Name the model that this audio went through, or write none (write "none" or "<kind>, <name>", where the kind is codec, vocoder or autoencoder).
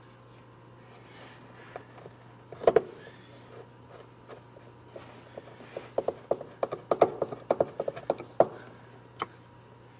none